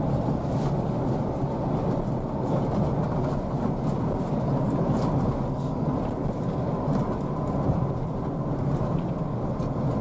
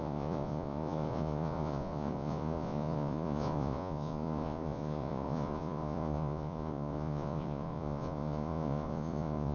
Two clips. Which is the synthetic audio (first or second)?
second